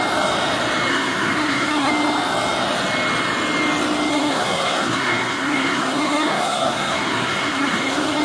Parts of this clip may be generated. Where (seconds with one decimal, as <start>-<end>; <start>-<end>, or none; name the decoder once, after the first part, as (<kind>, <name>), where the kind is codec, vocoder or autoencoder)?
0.9-1.9 (codec, SNAC); 4.1-8.2